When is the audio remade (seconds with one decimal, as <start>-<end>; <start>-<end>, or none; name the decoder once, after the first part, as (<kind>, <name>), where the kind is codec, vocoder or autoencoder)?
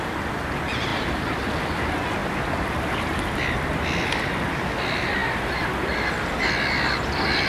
none